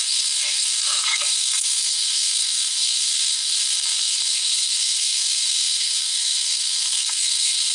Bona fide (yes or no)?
no